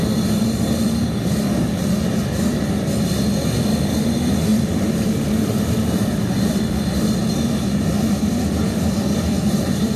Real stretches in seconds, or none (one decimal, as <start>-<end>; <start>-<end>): 7.2-8.2